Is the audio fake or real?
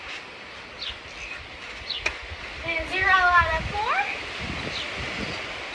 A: real